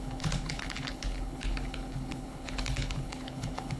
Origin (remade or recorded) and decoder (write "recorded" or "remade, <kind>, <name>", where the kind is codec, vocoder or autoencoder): remade, codec, HILCodec